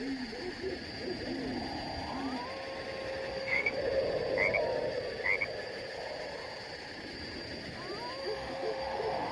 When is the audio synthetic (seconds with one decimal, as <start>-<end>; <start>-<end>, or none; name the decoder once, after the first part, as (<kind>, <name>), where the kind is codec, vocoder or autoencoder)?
3.3-3.8 (autoencoder, DAC-VAE); 8.2-9.3